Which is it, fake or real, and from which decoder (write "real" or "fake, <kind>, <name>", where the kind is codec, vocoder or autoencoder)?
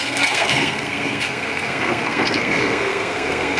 fake, codec, SNAC